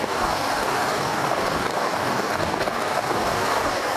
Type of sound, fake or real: fake